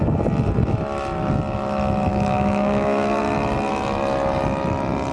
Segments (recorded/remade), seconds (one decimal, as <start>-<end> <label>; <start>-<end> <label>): 0.0-2.1 recorded; 2.1-3.2 remade; 3.2-5.1 recorded